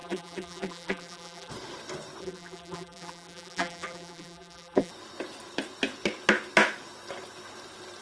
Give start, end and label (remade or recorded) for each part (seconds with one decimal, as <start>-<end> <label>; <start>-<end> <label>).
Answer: 0.0-1.5 remade; 1.5-2.2 recorded; 2.2-4.9 remade; 4.9-8.0 recorded